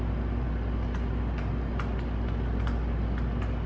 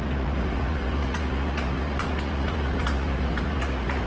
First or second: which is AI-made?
second